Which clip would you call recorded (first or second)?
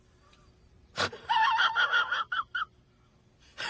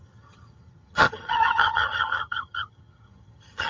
first